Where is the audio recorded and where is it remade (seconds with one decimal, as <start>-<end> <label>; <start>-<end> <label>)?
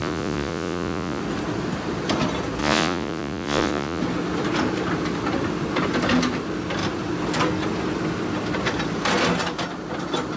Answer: 0.0-1.2 remade; 1.2-2.6 recorded; 2.6-4.0 remade; 4.0-10.4 recorded